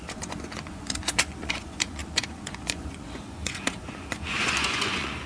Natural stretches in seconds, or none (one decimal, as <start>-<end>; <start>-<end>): none